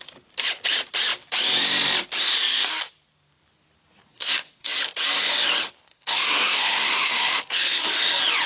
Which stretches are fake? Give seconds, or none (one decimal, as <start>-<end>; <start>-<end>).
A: 4.1-4.8; 5.9-7.8